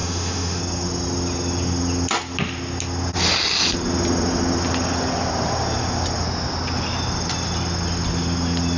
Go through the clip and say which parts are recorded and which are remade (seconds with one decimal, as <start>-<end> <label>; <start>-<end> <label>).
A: 0.0-0.6 remade; 0.6-8.8 recorded